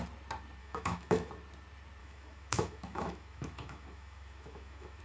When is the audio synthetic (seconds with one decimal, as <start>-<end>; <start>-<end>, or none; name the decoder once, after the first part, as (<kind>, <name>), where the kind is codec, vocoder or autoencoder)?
0.6-1.3 (autoencoder, DAC-VAE); 2.0-5.0